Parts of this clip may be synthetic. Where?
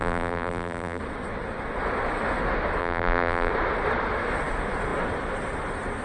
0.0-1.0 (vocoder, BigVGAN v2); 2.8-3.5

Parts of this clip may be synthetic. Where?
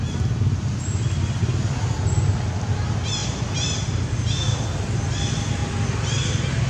3.2-4.6 (vocoder, BigVGAN v2)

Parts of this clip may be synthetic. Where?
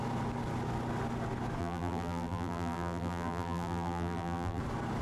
1.6-4.6 (vocoder, BigVGAN v2)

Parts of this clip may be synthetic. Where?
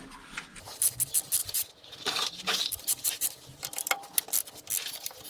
1.4-4.2 (vocoder, BigVGAN v2)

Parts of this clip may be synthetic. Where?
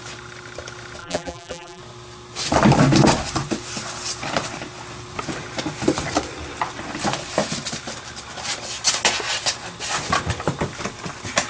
1.0-1.8 (vocoder, BigVGAN v2)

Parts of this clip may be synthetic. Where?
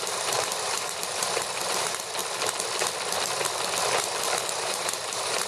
0.0-2.2 (vocoder, BigVGAN v2); 4.5-5.5